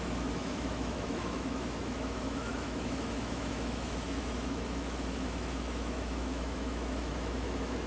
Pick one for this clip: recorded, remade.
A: remade